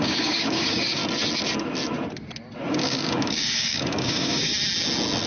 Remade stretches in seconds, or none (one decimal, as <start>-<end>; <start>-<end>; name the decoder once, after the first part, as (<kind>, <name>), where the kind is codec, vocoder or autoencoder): 0.0-1.0 (codec, DAC); 2.7-4.5

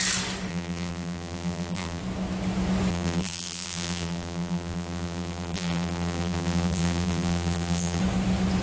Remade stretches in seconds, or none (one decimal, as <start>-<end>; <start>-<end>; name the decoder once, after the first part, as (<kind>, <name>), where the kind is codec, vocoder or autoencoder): 0.5-2.0 (vocoder, BigVGAN v2); 2.9-8.0

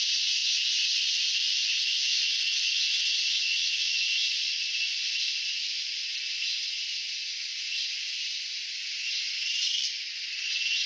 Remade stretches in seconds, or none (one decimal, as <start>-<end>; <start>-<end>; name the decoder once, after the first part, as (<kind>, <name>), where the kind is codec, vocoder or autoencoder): none

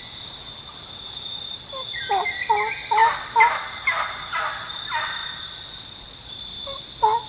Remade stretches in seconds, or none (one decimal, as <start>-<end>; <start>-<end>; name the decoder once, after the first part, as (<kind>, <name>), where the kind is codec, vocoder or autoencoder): none

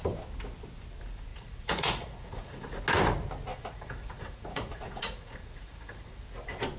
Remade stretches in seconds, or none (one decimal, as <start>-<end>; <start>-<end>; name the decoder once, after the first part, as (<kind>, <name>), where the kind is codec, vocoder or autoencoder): 1.3-2.8 (vocoder, Vocos); 3.5-6.2

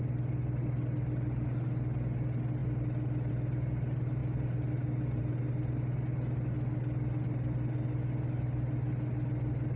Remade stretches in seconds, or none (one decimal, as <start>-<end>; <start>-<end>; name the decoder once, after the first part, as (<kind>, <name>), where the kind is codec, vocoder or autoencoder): none